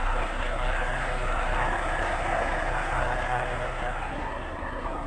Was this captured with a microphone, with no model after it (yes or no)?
no